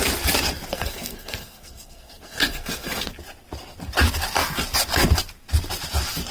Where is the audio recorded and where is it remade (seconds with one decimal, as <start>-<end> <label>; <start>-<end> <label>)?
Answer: 0.0-0.7 recorded; 0.7-3.1 remade; 3.1-6.3 recorded